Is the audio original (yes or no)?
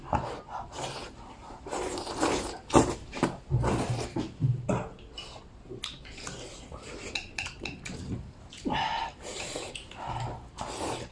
yes